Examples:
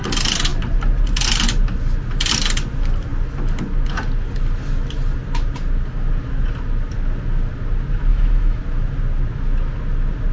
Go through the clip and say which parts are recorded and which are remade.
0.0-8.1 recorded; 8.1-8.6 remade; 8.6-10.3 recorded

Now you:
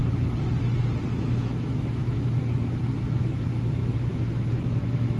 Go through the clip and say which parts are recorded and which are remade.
0.0-1.2 recorded; 1.2-2.0 remade; 2.0-3.2 recorded; 3.2-5.2 remade

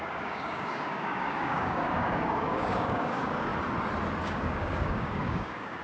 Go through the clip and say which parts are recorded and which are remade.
0.0-3.5 remade; 3.5-4.2 recorded; 4.2-5.8 remade

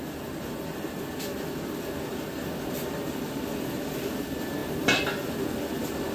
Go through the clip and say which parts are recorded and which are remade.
0.0-6.1 recorded

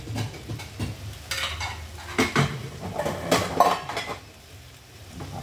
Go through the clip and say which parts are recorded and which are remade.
0.0-2.6 recorded; 2.6-4.2 remade; 4.2-5.4 recorded

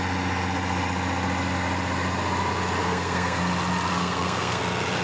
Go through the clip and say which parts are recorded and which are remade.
0.0-2.8 recorded; 2.8-3.4 remade; 3.4-3.9 recorded; 3.9-4.6 remade; 4.6-5.0 recorded

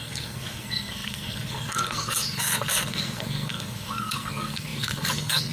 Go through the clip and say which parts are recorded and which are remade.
0.0-5.5 remade